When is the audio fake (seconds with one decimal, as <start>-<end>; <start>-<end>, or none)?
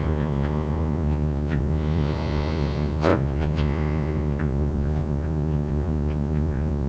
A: 0.0-6.9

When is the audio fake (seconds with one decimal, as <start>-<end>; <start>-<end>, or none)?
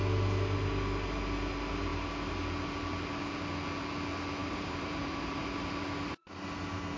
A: 4.4-5.7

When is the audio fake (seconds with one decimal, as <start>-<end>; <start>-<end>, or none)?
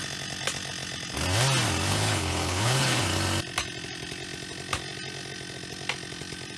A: 1.9-3.0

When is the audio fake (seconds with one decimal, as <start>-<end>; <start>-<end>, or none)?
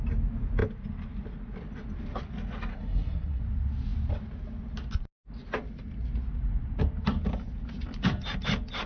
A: 2.7-3.4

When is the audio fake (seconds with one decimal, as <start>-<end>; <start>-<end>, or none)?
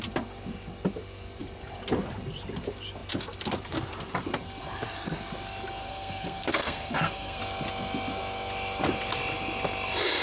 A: 5.8-7.4